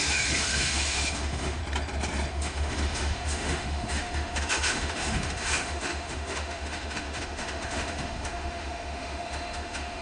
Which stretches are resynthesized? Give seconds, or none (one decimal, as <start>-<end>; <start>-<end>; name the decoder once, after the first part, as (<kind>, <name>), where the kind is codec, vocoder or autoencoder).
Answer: 0.0-1.6 (autoencoder, DAC-VAE); 2.3-10.0